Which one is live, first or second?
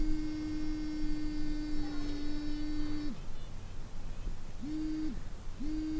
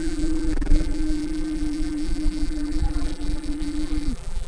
first